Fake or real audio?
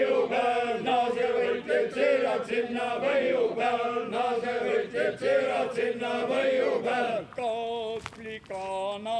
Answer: real